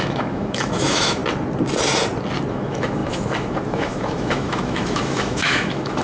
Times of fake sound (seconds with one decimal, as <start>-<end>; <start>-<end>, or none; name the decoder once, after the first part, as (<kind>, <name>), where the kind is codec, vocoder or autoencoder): 0.0-1.2 (autoencoder, DAC-VAE); 2.5-6.0